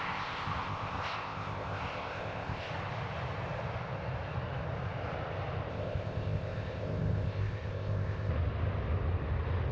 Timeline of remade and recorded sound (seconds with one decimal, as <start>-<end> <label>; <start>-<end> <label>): 0.0-2.7 remade; 2.7-5.7 recorded; 5.7-8.3 remade; 8.3-9.7 recorded